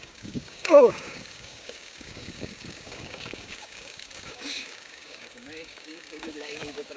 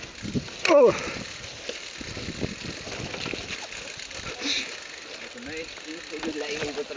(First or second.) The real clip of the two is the second